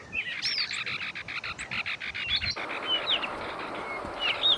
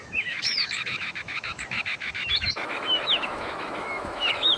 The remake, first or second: second